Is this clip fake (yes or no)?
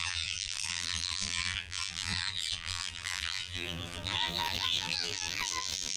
yes